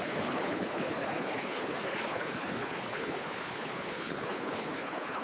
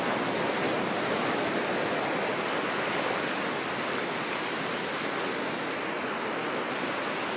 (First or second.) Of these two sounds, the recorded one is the second